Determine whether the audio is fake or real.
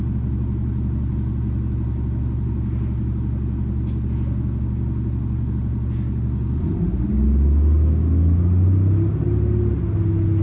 real